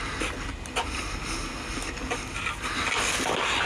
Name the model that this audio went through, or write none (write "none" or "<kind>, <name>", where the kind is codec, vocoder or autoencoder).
none